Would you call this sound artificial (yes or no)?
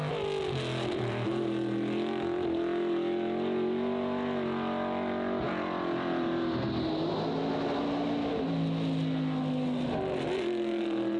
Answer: no